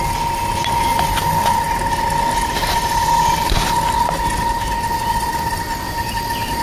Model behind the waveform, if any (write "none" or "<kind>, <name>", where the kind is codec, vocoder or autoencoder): none